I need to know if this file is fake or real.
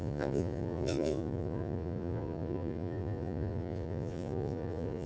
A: fake